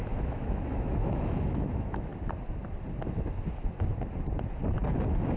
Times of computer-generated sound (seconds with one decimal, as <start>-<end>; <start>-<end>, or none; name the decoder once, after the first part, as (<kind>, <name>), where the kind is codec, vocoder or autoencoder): 0.0-2.1 (autoencoder, DAC-VAE)